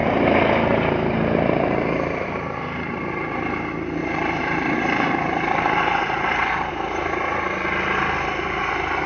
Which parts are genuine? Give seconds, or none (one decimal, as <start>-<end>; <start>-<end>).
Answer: 3.1-4.0; 6.7-9.1